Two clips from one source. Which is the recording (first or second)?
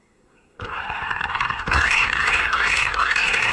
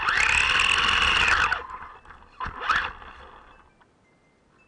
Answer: second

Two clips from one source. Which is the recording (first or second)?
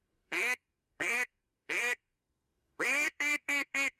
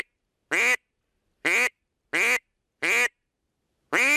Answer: second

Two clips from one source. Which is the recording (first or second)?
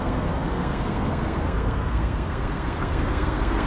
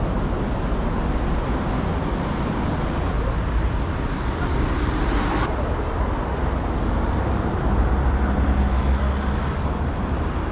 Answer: second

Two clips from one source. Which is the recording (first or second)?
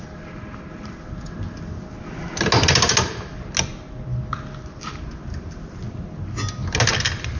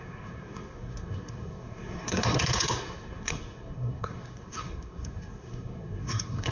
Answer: first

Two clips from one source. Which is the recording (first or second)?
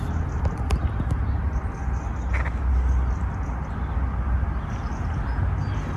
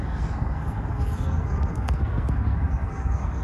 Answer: first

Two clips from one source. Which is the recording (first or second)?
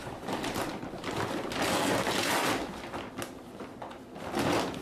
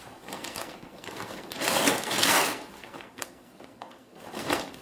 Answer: first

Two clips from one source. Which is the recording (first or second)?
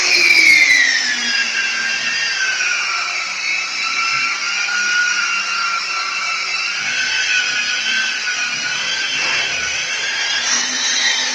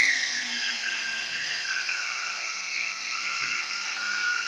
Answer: first